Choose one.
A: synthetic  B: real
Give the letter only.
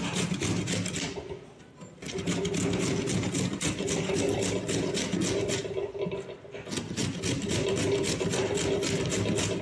B